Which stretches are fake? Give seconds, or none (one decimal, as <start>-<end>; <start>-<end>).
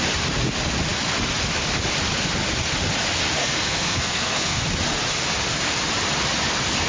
3.4-4.6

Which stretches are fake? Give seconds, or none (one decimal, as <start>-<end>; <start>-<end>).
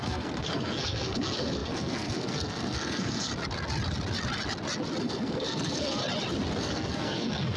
0.0-3.3; 5.0-6.0; 6.6-7.6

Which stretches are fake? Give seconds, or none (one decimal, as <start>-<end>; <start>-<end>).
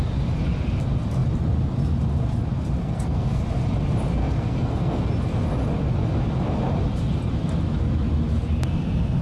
2.8-3.4; 4.2-5.0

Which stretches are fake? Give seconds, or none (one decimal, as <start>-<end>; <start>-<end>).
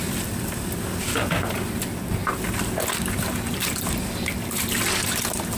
none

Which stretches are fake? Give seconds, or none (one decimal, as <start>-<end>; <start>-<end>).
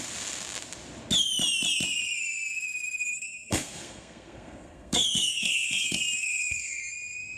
3.0-6.8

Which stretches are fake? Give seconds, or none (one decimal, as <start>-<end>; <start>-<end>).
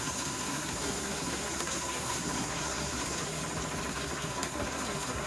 0.0-3.4; 3.9-5.3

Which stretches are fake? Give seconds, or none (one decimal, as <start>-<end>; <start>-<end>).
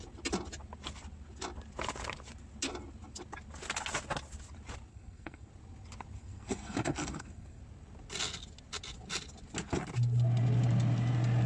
4.9-5.5; 6.2-7.6